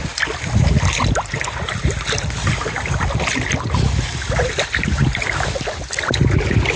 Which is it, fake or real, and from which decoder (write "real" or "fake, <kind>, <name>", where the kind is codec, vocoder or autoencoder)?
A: real